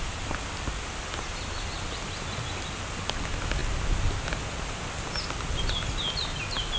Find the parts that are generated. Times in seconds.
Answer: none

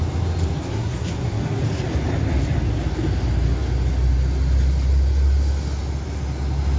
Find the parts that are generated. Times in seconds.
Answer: 0.6-1.6 (codec, SNAC)

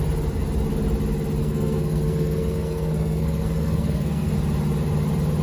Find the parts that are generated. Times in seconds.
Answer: 1.4-4.3 (codec, SNAC)